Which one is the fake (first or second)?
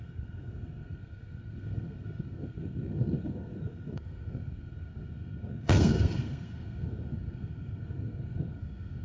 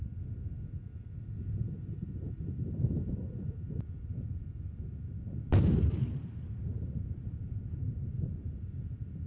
first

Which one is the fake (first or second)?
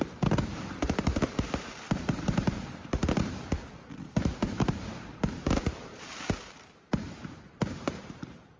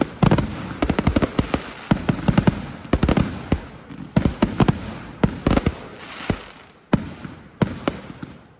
first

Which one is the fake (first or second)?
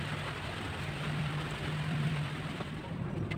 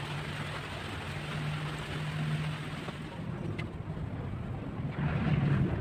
first